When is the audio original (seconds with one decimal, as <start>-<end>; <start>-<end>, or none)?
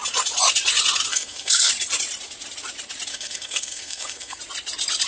0.0-1.1; 1.7-3.1; 4.4-5.1